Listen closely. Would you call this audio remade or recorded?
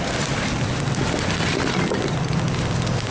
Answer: recorded